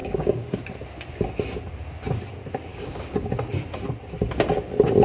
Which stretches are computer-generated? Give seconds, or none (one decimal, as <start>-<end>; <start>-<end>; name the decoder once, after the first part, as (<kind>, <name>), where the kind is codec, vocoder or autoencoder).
0.0-0.6 (codec, DAC); 2.7-3.3